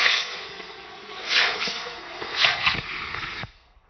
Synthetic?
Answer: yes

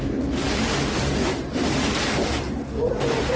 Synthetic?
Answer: no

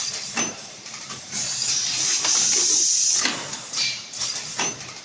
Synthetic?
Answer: yes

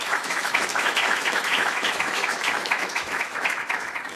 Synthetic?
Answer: yes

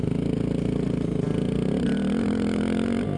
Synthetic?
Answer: no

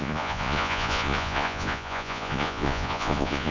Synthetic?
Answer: yes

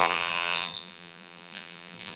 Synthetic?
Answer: yes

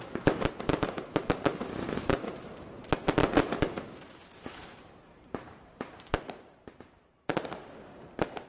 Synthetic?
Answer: yes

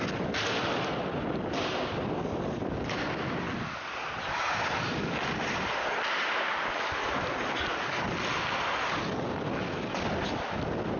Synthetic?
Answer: no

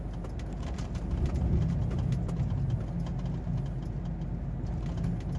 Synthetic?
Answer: no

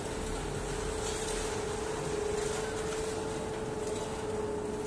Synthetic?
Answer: no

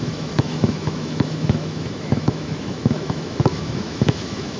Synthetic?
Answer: yes